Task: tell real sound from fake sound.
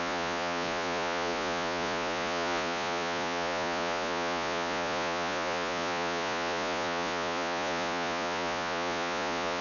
fake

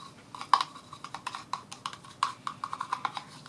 real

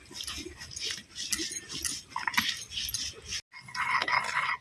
real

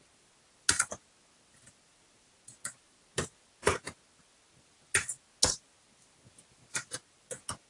real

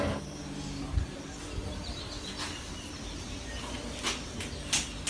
real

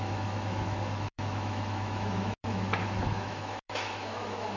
fake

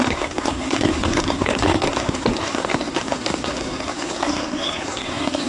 fake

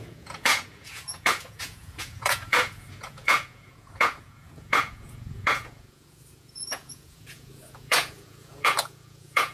fake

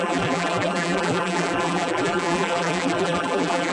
fake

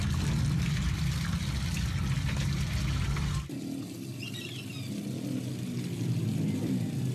real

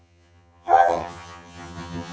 fake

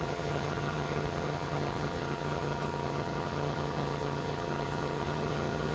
fake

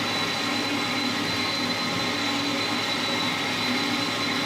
real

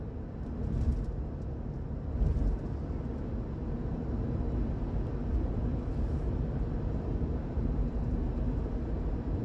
real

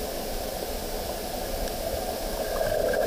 real